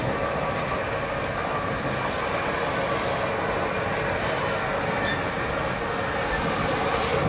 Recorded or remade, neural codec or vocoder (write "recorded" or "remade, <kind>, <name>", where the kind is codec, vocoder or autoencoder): recorded